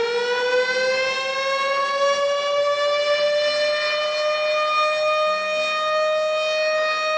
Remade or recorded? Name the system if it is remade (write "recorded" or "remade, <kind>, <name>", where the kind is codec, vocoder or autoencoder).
recorded